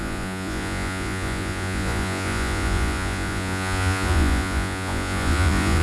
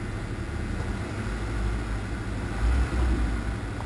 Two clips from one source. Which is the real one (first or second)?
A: second